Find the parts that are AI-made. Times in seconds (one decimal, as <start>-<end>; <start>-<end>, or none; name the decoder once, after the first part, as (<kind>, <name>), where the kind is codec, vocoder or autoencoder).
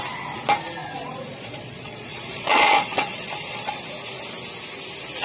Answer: 0.8-3.9 (vocoder, Vocos)